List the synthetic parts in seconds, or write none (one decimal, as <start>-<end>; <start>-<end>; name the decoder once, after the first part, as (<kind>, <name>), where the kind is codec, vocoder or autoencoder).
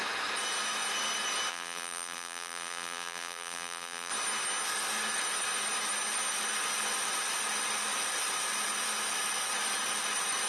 1.5-4.1 (vocoder, BigVGAN v2)